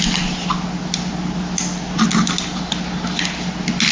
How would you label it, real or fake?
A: real